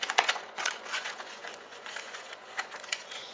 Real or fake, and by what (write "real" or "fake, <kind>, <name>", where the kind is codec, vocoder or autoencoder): fake, vocoder, Vocos